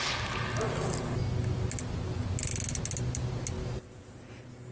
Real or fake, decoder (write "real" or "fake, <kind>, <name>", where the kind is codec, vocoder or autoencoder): real